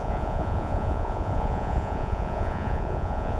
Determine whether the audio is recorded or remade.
remade